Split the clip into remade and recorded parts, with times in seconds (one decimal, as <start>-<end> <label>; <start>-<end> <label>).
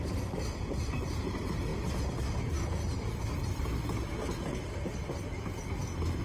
0.0-6.2 recorded